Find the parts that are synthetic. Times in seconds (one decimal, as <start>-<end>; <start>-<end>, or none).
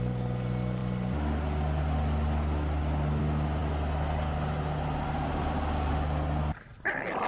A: none